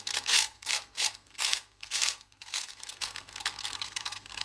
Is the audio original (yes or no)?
no